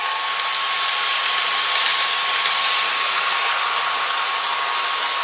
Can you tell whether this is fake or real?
real